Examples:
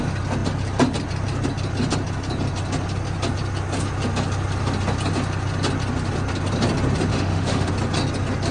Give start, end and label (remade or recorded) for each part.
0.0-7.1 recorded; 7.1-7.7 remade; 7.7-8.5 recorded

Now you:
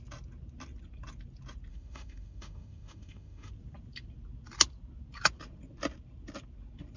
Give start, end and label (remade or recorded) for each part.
0.0-1.7 recorded; 1.7-3.5 remade; 3.5-7.0 recorded

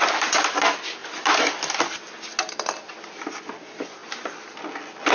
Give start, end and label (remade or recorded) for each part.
0.0-5.1 recorded

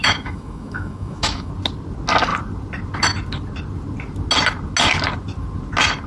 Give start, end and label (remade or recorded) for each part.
0.0-1.5 remade; 1.5-6.1 recorded

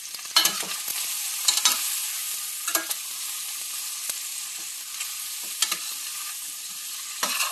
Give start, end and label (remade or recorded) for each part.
0.0-7.5 recorded

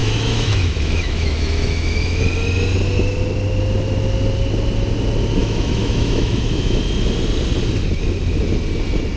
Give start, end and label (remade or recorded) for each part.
0.0-2.2 remade; 2.2-5.4 recorded; 5.4-6.8 remade; 6.8-9.2 recorded

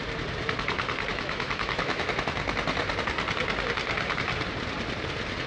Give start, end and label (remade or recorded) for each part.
0.0-1.1 recorded; 1.1-2.1 remade; 2.1-5.5 recorded